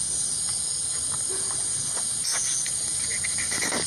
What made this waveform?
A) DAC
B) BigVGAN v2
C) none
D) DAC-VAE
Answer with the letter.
C